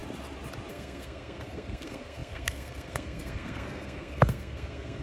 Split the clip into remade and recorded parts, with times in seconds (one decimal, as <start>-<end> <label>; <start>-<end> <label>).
0.0-0.7 recorded; 0.7-5.0 remade